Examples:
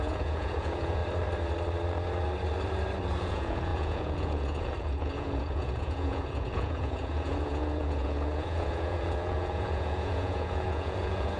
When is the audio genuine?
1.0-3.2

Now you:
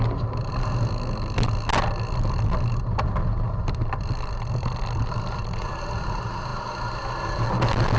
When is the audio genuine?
0.0-8.0